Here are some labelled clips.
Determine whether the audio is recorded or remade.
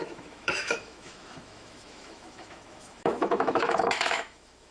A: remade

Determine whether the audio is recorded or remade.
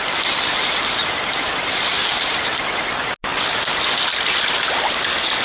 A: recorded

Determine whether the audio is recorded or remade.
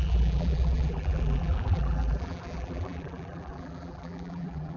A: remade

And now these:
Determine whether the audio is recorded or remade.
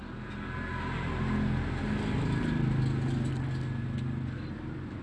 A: recorded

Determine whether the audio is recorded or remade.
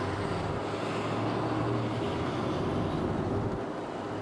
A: recorded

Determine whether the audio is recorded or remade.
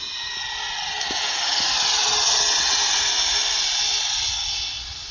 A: recorded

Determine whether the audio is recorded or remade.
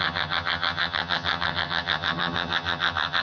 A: remade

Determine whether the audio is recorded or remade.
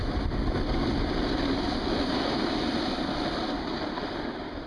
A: recorded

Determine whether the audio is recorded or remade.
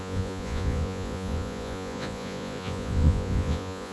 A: remade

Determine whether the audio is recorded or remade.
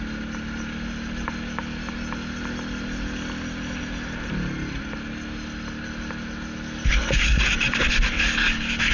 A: recorded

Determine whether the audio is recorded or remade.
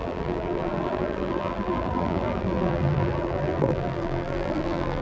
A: remade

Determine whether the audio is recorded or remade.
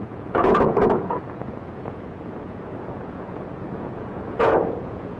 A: remade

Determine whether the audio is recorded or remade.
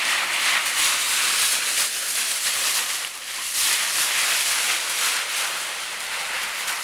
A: recorded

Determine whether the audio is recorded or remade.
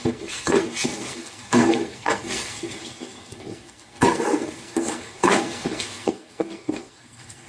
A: remade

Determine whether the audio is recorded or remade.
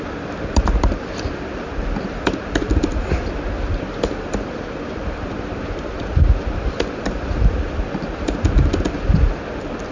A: recorded